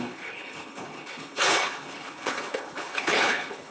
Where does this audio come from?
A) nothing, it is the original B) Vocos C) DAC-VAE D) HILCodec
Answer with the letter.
D